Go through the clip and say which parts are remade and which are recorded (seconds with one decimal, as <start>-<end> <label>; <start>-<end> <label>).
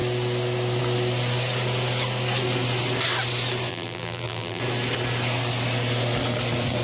0.0-3.7 recorded; 3.7-4.6 remade; 4.6-6.8 recorded